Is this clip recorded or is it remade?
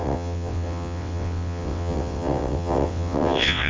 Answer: remade